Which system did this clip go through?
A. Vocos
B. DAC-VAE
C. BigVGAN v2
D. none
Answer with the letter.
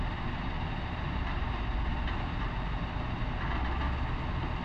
D